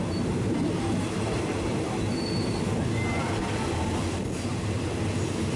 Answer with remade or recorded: recorded